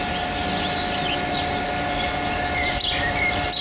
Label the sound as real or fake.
real